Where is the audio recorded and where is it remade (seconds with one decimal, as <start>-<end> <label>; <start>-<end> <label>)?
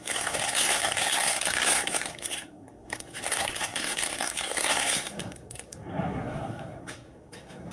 0.0-7.7 remade